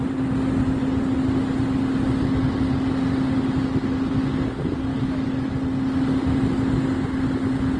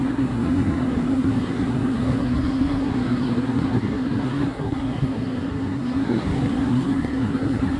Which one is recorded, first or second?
first